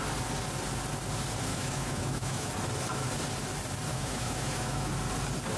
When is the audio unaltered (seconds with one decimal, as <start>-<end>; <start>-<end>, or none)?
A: 0.0-1.5; 2.5-3.9; 4.9-5.6